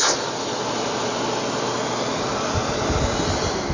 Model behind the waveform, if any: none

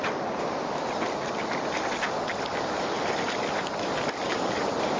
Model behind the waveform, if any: none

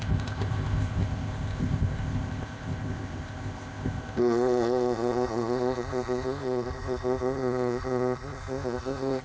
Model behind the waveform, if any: codec, ZipCodec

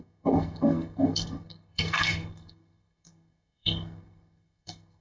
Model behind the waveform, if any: codec, SNAC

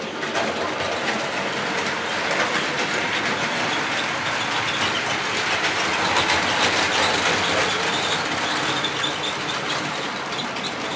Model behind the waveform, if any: none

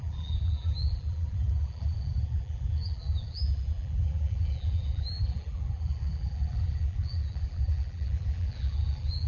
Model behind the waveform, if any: vocoder, BigVGAN v2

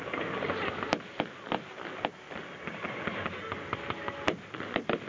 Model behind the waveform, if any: none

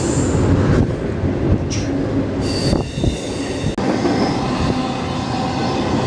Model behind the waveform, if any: none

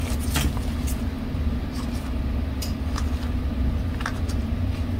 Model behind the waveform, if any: none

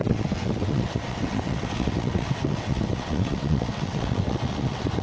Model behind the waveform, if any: vocoder, WaveNeXt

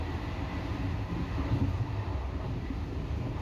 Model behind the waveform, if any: none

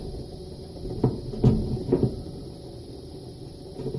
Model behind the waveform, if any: none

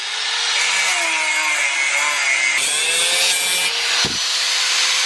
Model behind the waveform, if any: none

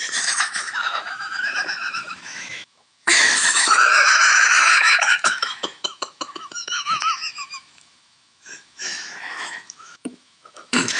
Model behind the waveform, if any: autoencoder, DAC-VAE